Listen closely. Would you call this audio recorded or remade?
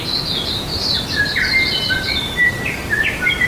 remade